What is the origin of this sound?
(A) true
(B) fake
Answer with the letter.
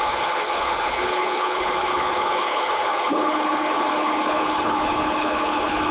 B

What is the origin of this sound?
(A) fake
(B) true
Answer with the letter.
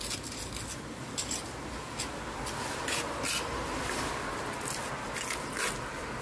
B